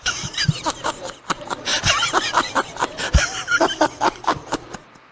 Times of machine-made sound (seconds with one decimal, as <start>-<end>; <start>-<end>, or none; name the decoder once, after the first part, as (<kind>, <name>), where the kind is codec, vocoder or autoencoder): 0.0-5.1 (vocoder, BigVGAN v2)